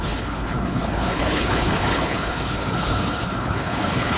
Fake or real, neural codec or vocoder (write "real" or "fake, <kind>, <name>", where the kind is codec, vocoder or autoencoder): fake, codec, HILCodec